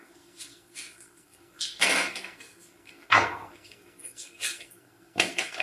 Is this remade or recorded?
remade